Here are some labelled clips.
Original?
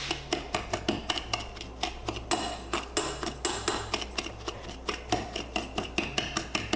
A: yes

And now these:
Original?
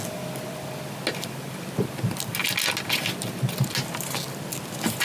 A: yes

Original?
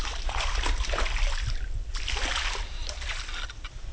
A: yes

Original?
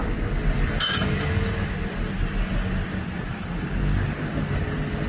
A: yes